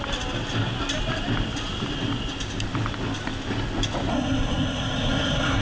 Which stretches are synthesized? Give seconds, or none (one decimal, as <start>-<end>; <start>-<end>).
4.1-5.6